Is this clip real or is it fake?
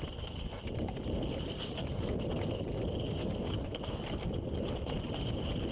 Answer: real